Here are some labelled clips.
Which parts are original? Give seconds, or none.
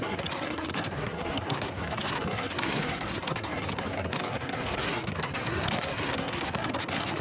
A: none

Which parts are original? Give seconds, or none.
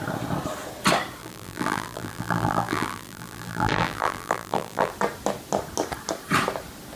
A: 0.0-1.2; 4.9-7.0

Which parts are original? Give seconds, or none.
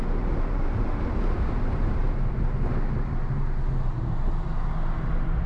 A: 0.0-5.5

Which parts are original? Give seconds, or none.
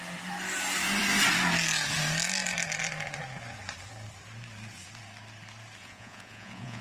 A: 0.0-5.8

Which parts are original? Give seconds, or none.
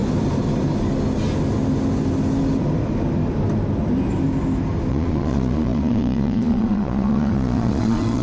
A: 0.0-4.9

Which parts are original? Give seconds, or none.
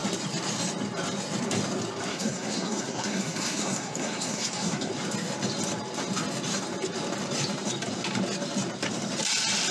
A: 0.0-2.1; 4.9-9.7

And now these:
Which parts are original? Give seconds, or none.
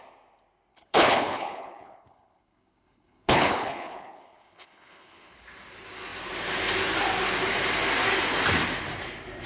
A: 0.0-0.7; 5.4-9.5